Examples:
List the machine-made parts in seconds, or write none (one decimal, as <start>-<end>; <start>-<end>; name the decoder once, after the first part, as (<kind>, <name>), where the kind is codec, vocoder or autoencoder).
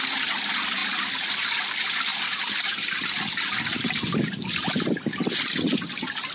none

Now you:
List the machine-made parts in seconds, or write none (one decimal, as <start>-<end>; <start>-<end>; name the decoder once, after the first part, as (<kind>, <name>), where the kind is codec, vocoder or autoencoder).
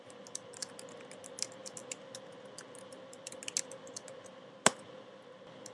none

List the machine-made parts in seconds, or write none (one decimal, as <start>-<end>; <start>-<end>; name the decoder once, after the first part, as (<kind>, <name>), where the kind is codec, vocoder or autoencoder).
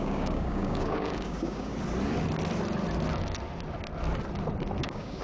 0.0-1.7 (codec, DAC); 4.8-5.2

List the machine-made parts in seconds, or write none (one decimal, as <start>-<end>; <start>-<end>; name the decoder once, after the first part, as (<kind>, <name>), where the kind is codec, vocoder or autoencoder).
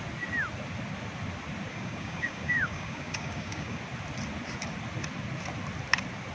1.7-3.8 (codec, DAC)